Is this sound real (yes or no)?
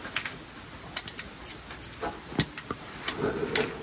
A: yes